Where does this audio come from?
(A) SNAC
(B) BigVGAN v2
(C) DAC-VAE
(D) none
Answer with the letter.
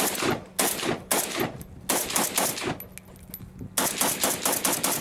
D